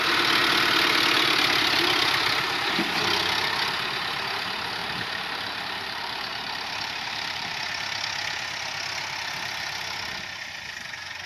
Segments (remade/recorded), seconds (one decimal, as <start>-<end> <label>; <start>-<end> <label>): 0.0-4.8 recorded; 4.8-7.5 remade; 7.5-11.3 recorded

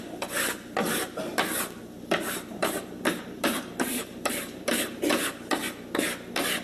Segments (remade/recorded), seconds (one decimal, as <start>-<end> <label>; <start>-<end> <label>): 0.0-2.6 recorded; 2.6-5.1 remade; 5.1-6.6 recorded

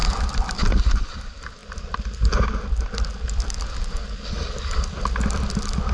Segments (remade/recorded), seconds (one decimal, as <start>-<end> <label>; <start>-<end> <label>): 0.0-5.9 recorded

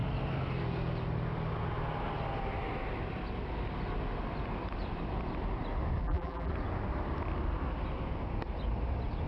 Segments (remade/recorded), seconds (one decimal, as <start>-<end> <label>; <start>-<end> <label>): 0.0-6.0 recorded; 6.0-6.5 remade; 6.5-9.3 recorded

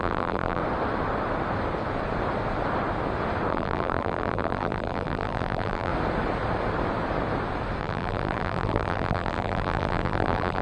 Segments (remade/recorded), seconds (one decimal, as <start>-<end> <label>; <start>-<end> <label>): 0.0-0.6 remade; 0.6-3.5 recorded; 3.5-5.9 remade; 5.9-7.8 recorded; 7.8-10.6 remade

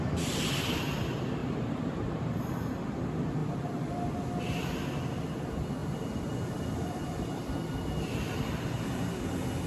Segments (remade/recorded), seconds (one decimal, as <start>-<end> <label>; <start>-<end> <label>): 0.0-1.4 recorded; 1.4-2.4 remade; 2.4-3.4 recorded; 3.4-4.0 remade; 4.0-9.7 recorded

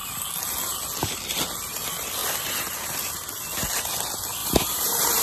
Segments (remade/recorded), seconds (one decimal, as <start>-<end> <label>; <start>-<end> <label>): 0.0-4.4 recorded; 4.4-5.2 remade